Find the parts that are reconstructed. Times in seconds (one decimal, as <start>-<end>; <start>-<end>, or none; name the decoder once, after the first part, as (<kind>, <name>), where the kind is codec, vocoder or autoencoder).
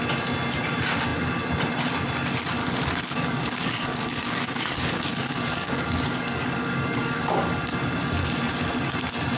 2.6-7.6 (codec, DAC)